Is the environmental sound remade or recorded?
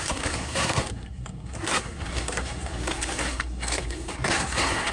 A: remade